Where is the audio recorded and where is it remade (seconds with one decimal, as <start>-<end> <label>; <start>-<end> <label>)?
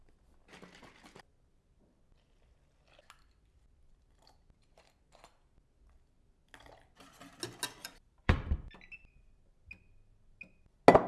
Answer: 0.0-7.8 recorded; 7.8-8.7 remade; 8.7-11.1 recorded